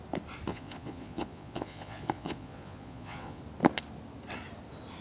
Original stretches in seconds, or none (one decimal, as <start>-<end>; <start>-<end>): 0.0-0.5; 3.4-5.0